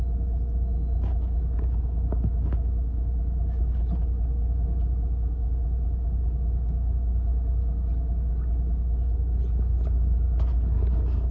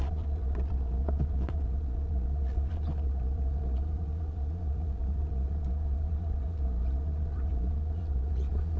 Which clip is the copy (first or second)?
second